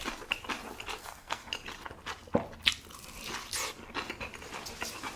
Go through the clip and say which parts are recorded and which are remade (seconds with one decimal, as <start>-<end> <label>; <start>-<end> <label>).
0.0-1.0 recorded; 1.0-1.5 remade; 1.5-5.2 recorded